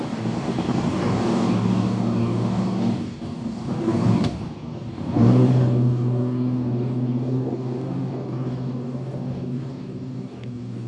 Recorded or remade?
remade